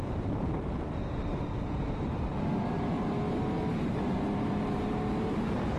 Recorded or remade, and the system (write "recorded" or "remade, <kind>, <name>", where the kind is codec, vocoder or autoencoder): remade, vocoder, BigVGAN v2